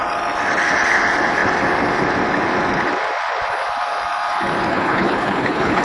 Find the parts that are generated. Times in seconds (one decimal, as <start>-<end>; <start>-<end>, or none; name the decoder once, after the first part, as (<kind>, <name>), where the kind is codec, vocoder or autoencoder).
4.7-5.8 (codec, HILCodec)